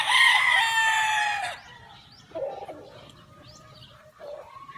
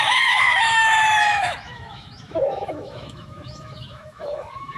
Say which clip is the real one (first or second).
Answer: first